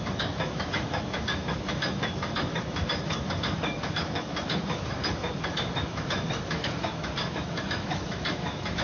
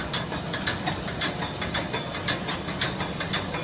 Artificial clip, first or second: first